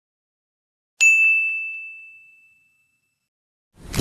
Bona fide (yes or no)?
yes